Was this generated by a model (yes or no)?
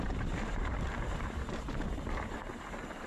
yes